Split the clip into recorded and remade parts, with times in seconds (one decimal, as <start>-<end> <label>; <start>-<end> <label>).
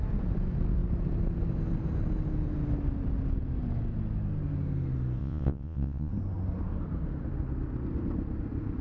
0.0-5.2 recorded; 5.2-6.1 remade; 6.1-8.8 recorded